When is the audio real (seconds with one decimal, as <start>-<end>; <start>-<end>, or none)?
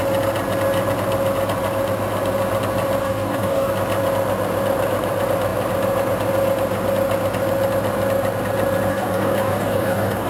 0.0-3.0; 3.7-8.9